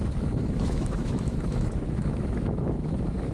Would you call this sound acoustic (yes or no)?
no